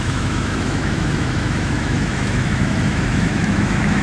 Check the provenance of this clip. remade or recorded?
remade